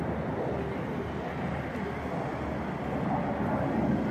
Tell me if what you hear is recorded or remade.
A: recorded